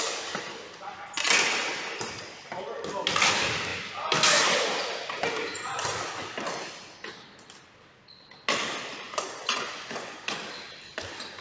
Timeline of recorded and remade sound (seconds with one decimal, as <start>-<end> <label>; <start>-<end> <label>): 0.0-8.9 recorded; 8.9-10.4 remade; 10.4-11.4 recorded